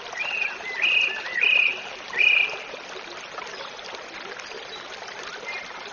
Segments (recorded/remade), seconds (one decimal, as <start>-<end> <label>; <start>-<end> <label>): 0.0-5.9 recorded